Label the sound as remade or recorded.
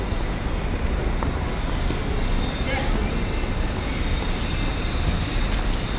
recorded